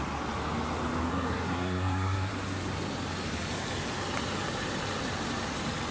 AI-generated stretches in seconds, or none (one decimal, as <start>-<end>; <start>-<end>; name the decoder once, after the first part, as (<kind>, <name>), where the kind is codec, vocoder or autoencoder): 1.1-2.3 (codec, SNAC)